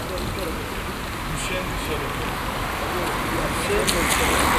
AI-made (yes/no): no